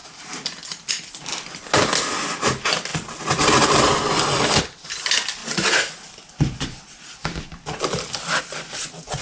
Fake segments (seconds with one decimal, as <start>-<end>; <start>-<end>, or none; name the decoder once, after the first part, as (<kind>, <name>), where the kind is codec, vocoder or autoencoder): none